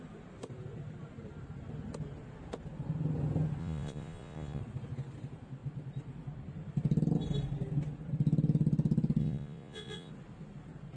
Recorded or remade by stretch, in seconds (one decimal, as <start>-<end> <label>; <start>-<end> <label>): 0.0-3.6 recorded; 3.6-4.6 remade; 4.6-9.2 recorded; 9.2-10.1 remade; 10.1-11.0 recorded